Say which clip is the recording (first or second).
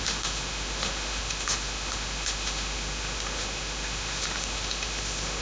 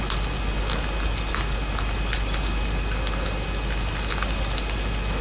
second